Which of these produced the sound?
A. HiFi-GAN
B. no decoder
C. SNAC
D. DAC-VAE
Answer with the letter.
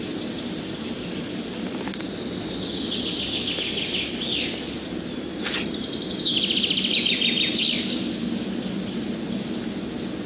B